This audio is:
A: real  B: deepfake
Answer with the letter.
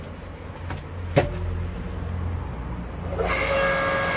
A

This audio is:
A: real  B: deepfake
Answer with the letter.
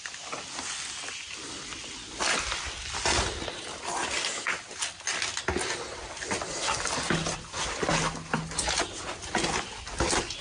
A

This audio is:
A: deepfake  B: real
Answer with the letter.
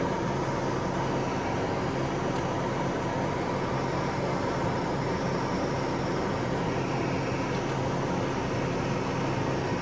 B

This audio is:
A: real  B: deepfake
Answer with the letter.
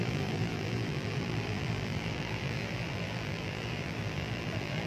B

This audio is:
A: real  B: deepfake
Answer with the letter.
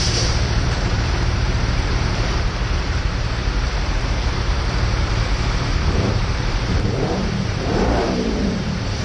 B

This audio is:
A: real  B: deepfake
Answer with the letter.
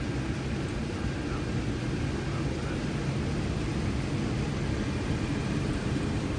A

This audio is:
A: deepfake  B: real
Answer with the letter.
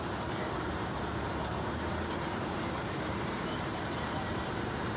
A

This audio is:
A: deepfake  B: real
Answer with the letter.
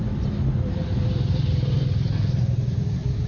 A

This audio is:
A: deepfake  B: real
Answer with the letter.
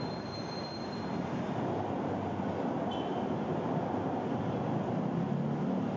B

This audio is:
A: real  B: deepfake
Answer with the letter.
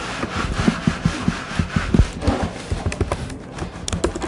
A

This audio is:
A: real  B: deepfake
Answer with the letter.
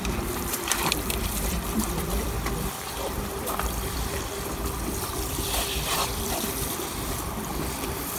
B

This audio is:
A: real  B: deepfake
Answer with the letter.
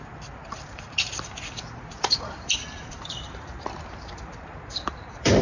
B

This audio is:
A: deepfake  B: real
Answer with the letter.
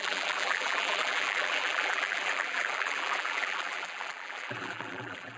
A